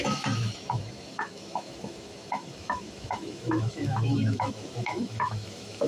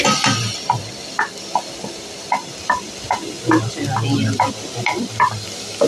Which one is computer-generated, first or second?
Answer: first